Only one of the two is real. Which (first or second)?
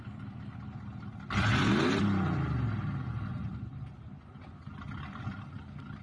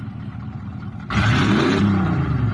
first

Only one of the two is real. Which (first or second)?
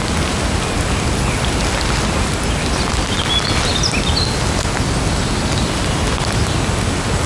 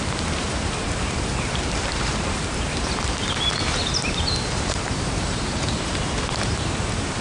first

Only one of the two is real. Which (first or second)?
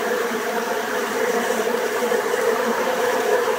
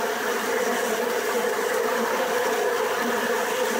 second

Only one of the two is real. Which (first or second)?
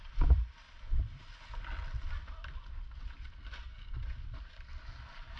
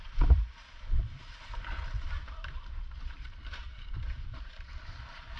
first